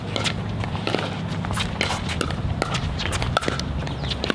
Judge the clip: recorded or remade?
recorded